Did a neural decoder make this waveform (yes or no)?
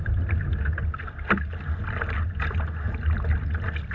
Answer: no